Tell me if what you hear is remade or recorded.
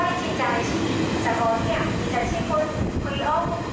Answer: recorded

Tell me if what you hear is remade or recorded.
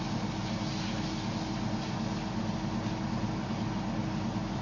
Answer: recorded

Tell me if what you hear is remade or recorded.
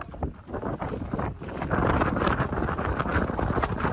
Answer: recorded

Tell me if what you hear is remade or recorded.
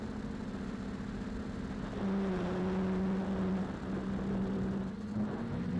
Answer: recorded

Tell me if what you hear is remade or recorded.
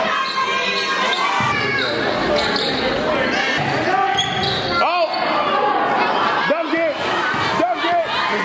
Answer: recorded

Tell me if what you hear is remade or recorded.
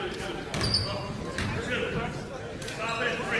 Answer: recorded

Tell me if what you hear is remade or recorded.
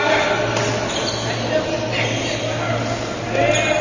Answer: recorded